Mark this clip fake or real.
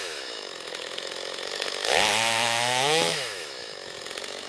fake